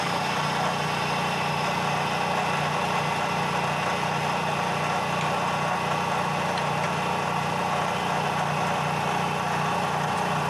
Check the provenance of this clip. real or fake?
real